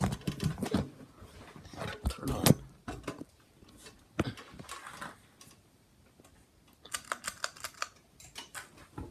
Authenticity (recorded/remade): recorded